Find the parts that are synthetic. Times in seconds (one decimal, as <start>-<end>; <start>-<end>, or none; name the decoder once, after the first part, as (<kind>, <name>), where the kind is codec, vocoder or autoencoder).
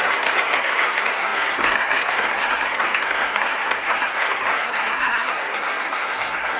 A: 0.0-6.6 (codec, SNAC)